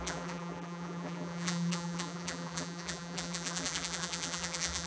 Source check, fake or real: fake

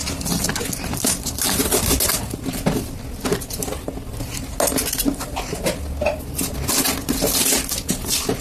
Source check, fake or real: real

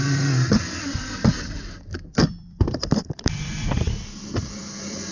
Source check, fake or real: fake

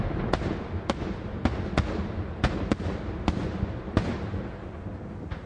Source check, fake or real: real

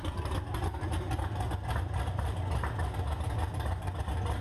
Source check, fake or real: real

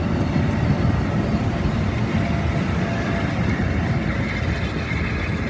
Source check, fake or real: real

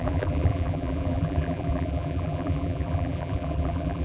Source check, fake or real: fake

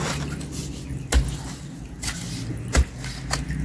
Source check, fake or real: real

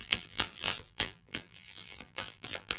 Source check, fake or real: fake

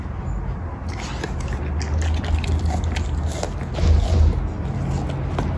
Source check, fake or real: real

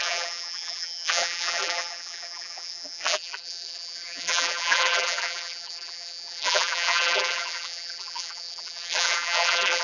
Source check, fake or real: fake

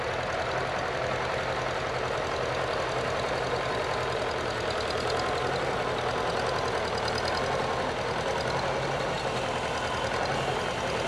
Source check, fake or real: real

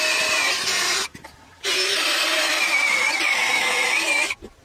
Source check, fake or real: real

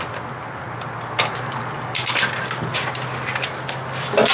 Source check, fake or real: real